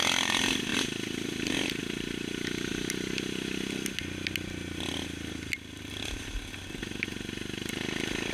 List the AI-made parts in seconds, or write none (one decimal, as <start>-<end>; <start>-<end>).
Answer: none